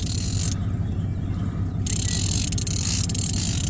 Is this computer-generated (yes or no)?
no